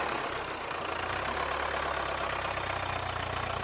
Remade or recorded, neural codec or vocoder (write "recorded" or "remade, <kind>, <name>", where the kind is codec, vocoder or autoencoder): recorded